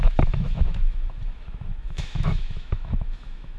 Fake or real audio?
fake